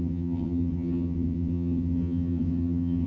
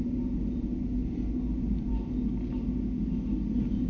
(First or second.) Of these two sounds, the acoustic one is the second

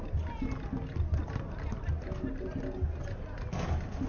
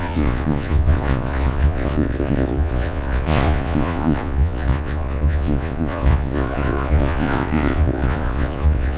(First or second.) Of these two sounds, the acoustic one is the first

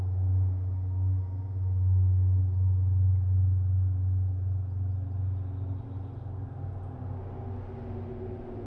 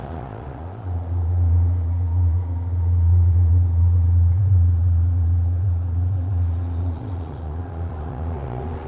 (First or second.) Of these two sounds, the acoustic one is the first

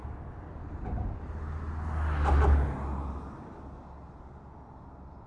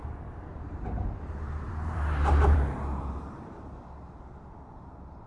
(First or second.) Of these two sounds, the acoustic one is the first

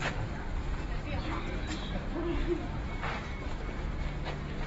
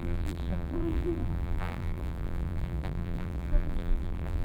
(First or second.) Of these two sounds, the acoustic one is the first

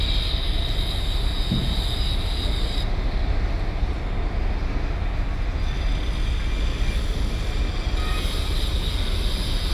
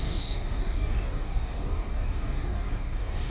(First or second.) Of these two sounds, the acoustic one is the first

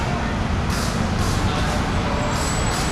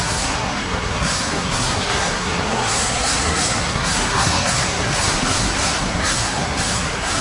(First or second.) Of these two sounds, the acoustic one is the first